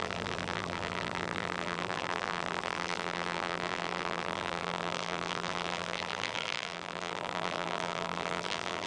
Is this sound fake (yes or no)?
yes